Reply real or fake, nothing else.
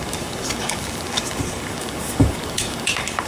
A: fake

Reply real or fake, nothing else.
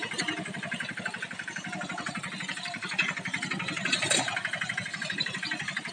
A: real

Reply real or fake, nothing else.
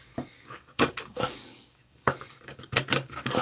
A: fake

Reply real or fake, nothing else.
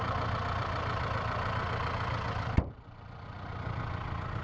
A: real